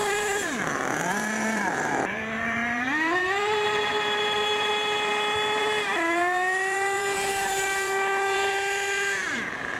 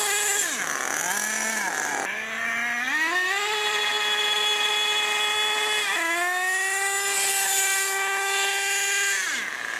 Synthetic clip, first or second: first